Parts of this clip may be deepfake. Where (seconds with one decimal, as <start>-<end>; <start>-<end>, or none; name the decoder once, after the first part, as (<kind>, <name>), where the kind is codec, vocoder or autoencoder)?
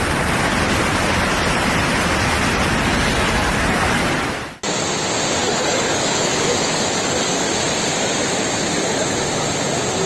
5.4-7.5 (codec, DAC)